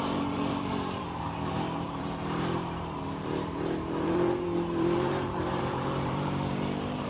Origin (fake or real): fake